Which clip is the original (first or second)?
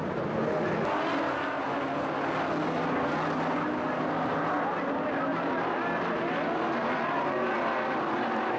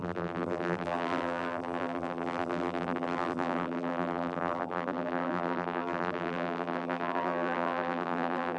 first